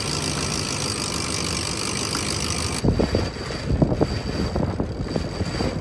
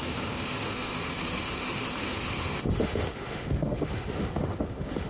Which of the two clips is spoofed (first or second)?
second